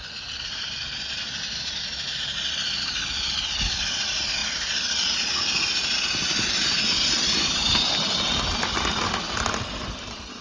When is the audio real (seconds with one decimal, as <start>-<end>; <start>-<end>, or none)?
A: 0.0-10.4